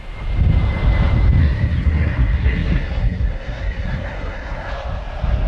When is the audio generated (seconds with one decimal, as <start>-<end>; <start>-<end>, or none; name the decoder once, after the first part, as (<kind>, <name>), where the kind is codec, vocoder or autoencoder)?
1.4-4.7 (codec, SNAC)

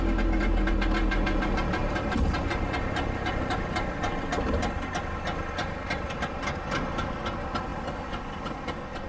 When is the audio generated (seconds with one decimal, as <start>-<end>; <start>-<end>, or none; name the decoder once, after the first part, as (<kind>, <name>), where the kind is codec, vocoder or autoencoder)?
1.8-4.5 (vocoder, BigVGAN v2)

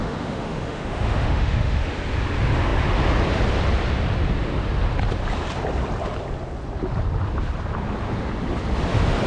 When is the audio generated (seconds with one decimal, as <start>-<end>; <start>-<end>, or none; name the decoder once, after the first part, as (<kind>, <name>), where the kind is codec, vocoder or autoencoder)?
0.0-1.9 (autoencoder, DAC-VAE)

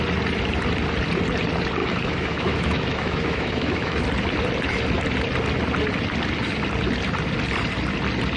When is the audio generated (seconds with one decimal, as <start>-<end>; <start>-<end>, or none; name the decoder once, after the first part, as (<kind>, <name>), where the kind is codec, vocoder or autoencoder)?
1.8-4.0 (autoencoder, DAC-VAE)